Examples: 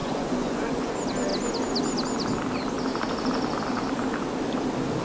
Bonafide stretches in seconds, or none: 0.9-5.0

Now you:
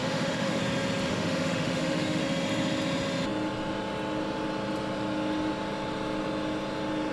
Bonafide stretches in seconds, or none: 0.6-1.1; 2.2-7.1

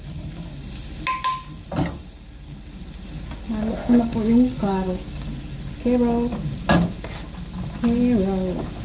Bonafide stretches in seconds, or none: 0.0-3.8; 5.3-8.8

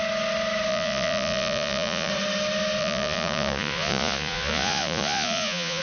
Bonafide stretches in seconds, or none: 0.0-0.7; 2.1-2.8

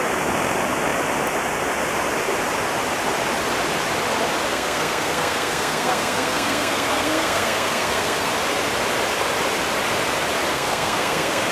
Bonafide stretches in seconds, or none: 0.0-4.5; 8.3-10.5

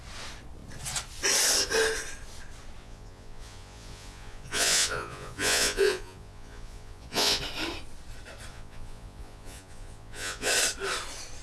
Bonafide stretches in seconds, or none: 0.0-2.8; 7.4-8.5; 10.5-11.4

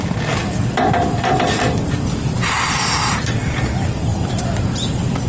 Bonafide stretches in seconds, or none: 0.0-0.4; 1.7-4.1

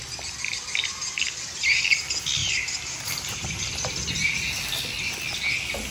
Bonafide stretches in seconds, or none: 0.0-2.4; 3.5-5.9